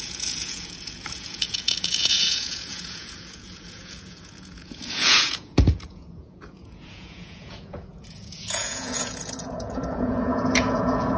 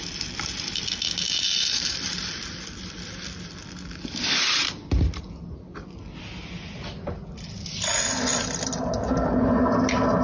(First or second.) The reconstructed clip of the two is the first